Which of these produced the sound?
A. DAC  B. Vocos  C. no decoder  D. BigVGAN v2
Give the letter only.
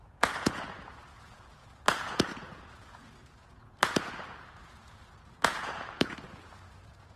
B